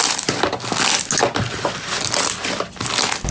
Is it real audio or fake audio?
real